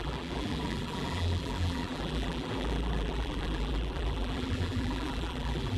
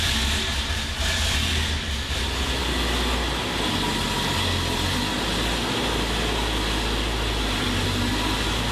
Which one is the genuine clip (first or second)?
second